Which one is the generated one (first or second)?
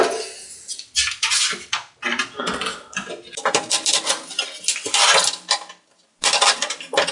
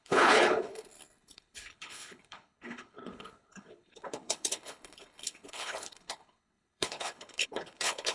second